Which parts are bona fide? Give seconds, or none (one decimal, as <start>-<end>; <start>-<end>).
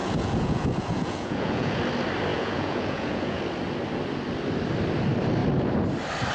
1.8-2.3; 3.4-6.3